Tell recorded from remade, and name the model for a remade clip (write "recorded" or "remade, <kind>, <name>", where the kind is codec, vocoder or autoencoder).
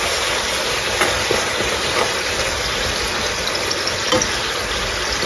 recorded